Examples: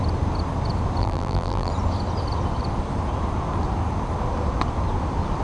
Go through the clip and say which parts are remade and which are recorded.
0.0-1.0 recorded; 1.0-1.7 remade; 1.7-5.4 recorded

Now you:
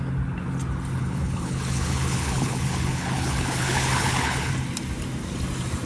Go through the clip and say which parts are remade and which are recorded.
0.0-1.0 recorded; 1.0-4.5 remade; 4.5-5.9 recorded